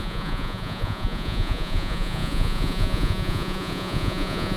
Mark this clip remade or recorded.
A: remade